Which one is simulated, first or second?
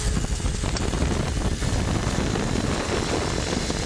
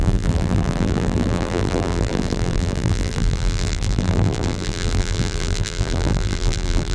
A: second